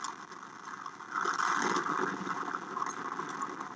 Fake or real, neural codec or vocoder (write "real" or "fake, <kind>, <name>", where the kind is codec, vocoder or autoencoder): real